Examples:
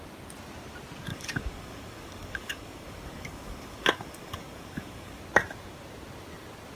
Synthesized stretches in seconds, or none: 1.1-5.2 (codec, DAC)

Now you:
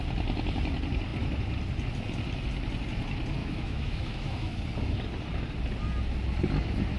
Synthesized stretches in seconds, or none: 3.4-4.6 (autoencoder, DAC-VAE)

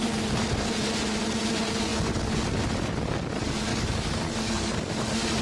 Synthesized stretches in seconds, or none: 3.7-4.9 (codec, DAC)

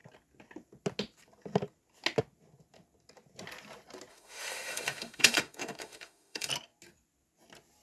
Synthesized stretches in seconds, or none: 4.1-6.5 (autoencoder, DAC-VAE)

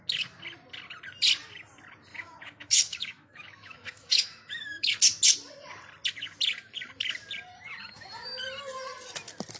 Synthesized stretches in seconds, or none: 2.1-5.0 (autoencoder, DAC-VAE)

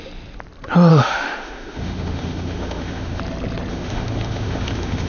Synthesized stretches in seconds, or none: 0.9-3.2 (autoencoder, DAC-VAE); 3.7-5.1

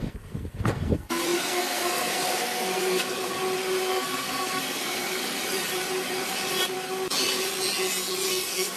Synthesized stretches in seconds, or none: 0.0-3.4 (codec, SNAC); 3.9-5.2; 8.3-8.8